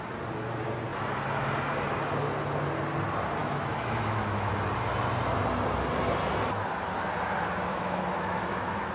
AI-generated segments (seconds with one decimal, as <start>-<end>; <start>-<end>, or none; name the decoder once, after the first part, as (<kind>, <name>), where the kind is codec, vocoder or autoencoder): 3.4-4.5 (autoencoder, DAC-VAE); 7.7-8.9